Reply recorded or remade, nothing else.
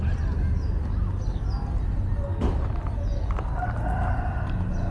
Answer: recorded